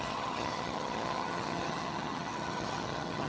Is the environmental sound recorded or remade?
remade